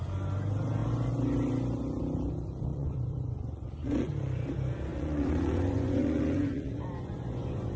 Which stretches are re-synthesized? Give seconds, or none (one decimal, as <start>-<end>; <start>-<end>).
2.7-4.1; 4.9-7.8